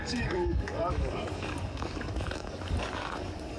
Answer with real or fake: fake